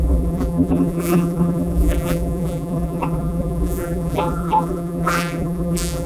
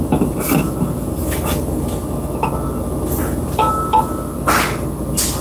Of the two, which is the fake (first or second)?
first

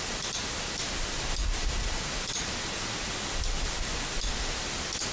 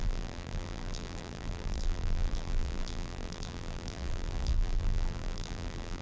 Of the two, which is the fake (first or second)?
second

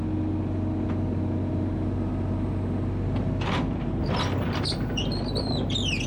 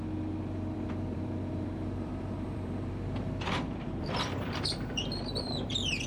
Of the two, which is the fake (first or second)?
second